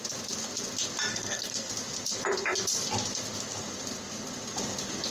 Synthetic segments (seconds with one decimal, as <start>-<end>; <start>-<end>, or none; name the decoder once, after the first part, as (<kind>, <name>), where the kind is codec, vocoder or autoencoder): 1.1-1.7 (codec, SNAC)